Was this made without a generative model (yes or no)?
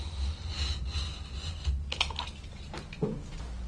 yes